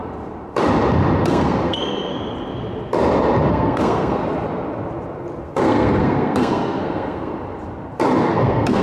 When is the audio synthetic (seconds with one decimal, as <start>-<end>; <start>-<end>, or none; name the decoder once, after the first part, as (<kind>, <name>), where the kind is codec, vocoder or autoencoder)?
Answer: 1.3-2.1 (codec, SNAC); 3.5-4.2; 5.4-7.3; 8.2-8.8

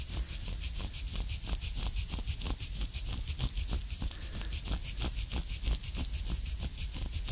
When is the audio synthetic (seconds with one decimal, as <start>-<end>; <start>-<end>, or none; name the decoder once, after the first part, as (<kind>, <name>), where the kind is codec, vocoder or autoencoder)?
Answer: none

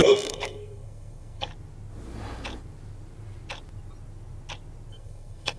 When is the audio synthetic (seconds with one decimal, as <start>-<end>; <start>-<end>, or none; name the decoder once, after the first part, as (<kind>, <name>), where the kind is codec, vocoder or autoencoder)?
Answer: 0.0-1.5 (codec, SNAC); 4.9-5.6

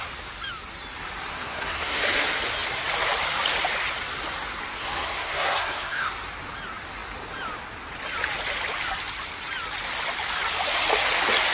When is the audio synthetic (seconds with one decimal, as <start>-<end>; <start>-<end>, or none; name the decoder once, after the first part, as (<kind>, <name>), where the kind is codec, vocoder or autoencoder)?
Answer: 1.3-2.0 (codec, SNAC); 4.8-6.1

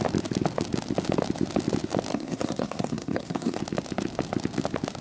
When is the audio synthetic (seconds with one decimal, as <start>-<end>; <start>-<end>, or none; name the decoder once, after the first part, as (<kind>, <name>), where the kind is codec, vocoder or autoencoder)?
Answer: 2.1-3.6 (codec, SNAC)

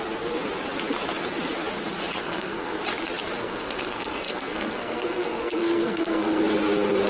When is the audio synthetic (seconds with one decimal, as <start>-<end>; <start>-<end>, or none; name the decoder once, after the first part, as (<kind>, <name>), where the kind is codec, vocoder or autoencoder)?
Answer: 2.2-2.8 (codec, SNAC); 3.4-6.4

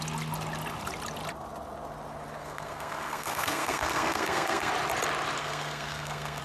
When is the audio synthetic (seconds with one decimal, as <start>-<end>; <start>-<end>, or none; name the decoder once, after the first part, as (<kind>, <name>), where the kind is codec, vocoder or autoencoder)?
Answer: 2.4-4.7 (codec, SNAC); 5.4-6.4